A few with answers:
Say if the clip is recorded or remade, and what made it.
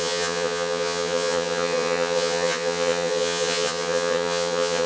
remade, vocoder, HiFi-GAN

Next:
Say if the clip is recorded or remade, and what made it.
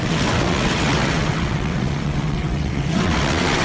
remade, vocoder, WaveNeXt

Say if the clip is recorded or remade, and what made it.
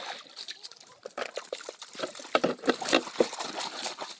recorded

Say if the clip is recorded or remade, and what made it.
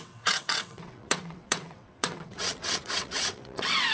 remade, vocoder, WaveNeXt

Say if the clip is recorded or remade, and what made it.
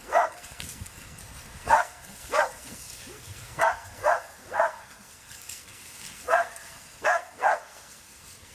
remade, codec, SNAC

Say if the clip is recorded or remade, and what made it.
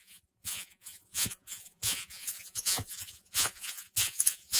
remade, vocoder, Vocos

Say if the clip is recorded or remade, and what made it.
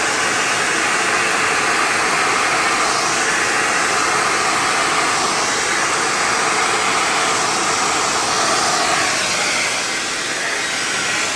recorded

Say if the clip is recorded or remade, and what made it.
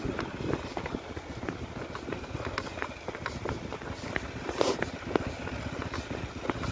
recorded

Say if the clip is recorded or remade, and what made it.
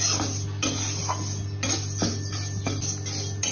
recorded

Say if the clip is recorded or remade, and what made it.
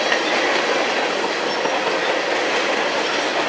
recorded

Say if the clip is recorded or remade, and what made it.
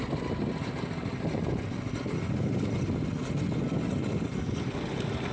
recorded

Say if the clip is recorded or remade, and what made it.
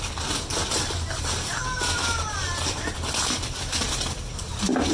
recorded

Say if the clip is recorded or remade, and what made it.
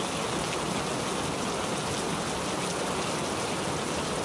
recorded